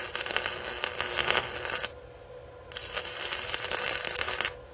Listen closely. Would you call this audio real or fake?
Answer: real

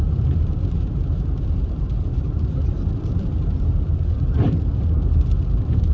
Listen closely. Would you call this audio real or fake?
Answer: fake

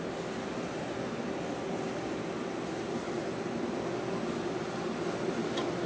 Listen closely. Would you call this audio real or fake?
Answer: real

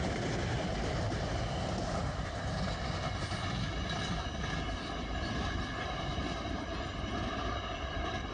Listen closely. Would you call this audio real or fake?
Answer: fake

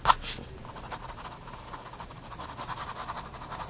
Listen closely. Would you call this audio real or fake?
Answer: real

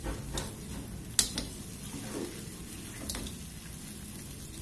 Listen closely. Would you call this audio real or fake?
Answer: real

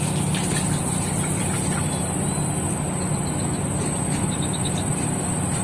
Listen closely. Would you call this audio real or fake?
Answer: real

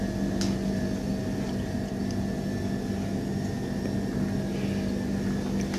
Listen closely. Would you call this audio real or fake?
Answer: real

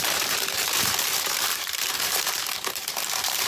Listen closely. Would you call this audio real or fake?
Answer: fake